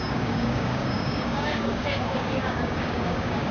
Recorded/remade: remade